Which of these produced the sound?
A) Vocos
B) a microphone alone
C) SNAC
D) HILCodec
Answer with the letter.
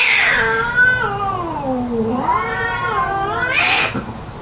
B